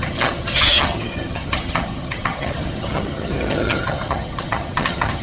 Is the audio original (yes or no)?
no